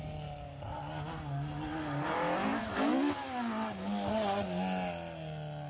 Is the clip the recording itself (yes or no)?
yes